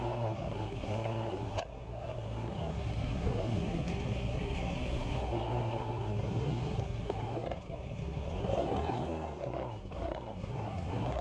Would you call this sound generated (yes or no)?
yes